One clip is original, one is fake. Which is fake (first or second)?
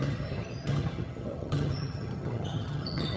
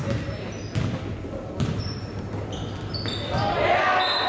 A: first